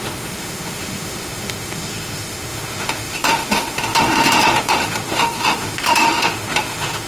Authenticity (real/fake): fake